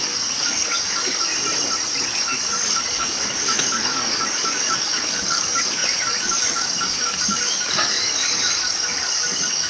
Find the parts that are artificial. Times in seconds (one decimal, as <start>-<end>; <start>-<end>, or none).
0.0-1.3; 2.1-9.7